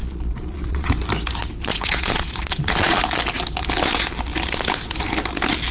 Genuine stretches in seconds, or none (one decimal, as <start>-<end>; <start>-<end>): 0.9-1.7; 3.0-5.7